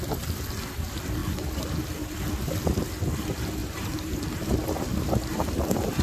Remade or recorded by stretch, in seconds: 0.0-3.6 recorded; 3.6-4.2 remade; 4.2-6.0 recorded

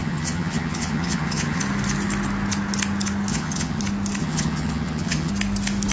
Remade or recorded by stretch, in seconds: 0.0-1.6 remade; 1.6-3.3 recorded; 3.3-3.8 remade; 3.8-4.2 recorded; 4.2-5.3 remade; 5.3-5.9 recorded

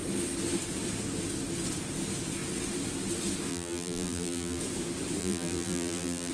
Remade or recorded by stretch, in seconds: 0.0-3.5 recorded; 3.5-4.6 remade; 4.6-5.2 recorded; 5.2-6.3 remade

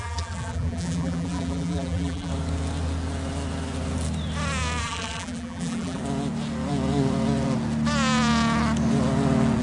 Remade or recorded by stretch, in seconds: 0.0-2.3 remade; 2.3-4.8 recorded; 4.8-6.0 remade; 6.0-9.6 recorded

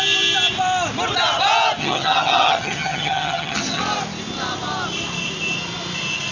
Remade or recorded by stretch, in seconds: 0.0-1.8 recorded; 1.8-3.8 remade; 3.8-6.3 recorded

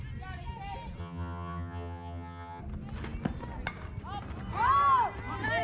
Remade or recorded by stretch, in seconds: 0.0-1.0 recorded; 1.0-2.6 remade; 2.6-5.6 recorded

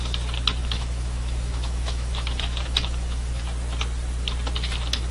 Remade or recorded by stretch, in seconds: 0.0-0.6 recorded; 0.6-3.4 remade; 3.4-5.1 recorded

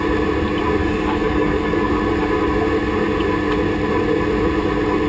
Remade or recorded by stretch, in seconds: 0.0-0.8 recorded; 0.8-1.9 remade; 1.9-5.1 recorded